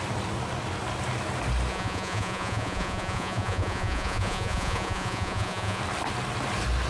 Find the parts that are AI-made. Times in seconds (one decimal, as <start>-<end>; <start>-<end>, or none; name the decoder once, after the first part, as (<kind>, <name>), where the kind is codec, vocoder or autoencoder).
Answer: 1.7-5.8 (vocoder, Vocos)